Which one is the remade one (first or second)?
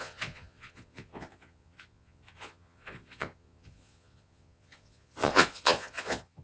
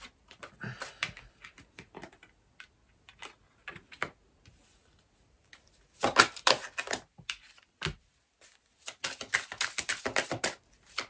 first